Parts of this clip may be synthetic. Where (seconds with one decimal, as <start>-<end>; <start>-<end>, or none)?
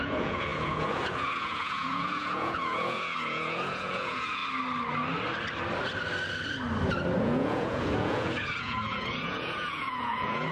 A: 0.0-4.4; 7.2-10.5